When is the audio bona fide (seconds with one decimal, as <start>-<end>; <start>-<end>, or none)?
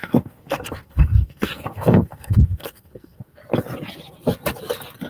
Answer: 3.4-5.1